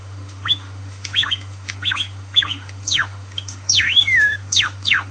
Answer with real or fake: fake